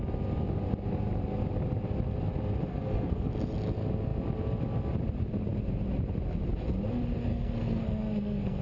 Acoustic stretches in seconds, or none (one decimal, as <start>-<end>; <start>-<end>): 0.0-2.7; 3.3-7.3

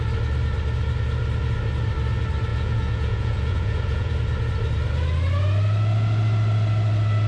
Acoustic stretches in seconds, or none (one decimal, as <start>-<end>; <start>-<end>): 0.0-2.5; 4.1-7.3